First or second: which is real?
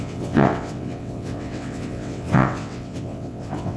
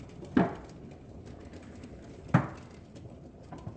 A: second